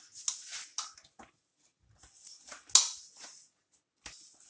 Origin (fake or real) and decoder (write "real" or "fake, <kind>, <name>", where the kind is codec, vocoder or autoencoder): real